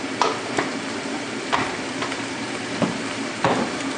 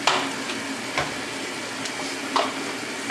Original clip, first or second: second